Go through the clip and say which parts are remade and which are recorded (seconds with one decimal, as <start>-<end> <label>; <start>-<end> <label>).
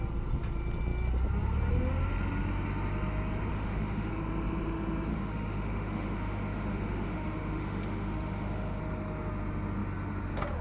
0.0-3.5 recorded; 3.5-4.1 remade; 4.1-5.1 recorded; 5.1-8.8 remade; 8.8-10.6 recorded